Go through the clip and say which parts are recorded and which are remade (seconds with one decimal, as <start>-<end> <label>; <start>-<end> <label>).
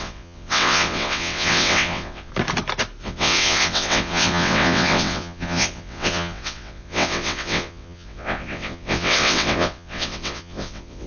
0.0-2.3 remade; 2.3-3.0 recorded; 3.0-11.1 remade